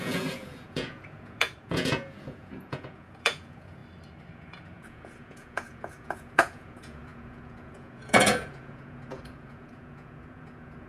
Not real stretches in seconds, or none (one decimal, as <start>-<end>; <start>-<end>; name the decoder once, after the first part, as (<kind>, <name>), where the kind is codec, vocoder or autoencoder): 0.0-3.8 (vocoder, Vocos); 4.3-10.9